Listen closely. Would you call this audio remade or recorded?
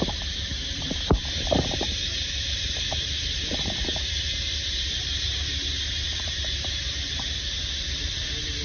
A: remade